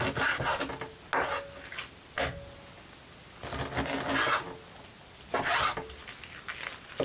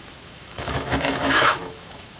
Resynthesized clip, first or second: second